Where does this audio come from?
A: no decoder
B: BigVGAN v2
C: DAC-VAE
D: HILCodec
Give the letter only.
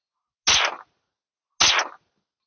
A